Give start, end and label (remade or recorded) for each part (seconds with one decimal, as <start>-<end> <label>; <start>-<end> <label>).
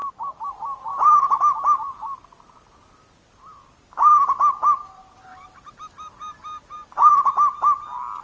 0.0-0.5 remade; 0.5-0.9 recorded; 0.9-1.4 remade; 1.4-8.2 recorded